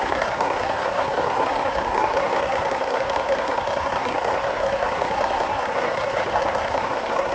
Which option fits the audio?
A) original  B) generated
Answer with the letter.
B